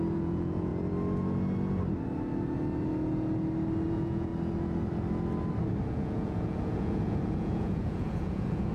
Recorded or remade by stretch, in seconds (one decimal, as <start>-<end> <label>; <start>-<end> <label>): 0.0-0.7 remade; 0.7-3.9 recorded; 3.9-4.3 remade; 4.3-5.9 recorded; 5.9-8.7 remade